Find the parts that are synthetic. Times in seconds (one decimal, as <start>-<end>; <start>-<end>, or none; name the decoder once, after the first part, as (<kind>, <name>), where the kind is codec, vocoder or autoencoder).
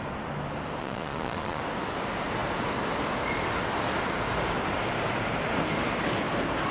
0.8-1.6 (vocoder, Vocos)